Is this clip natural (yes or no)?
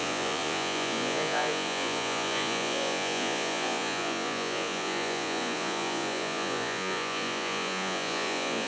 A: no